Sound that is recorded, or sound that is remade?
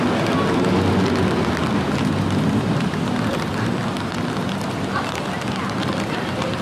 recorded